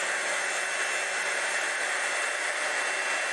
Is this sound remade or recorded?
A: recorded